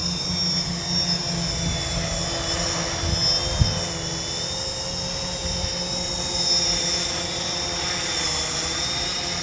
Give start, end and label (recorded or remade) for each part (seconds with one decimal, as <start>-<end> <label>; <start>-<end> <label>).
0.0-9.4 recorded